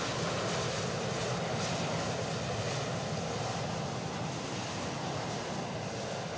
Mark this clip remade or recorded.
recorded